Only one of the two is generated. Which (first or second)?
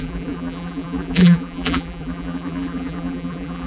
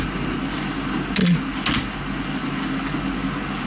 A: first